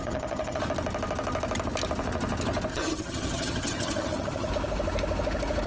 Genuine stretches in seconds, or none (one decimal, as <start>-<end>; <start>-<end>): 0.6-2.7; 4.5-5.7